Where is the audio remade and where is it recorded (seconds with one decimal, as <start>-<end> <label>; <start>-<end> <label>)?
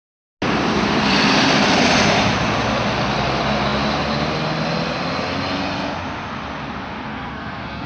0.0-7.1 recorded; 7.1-7.9 remade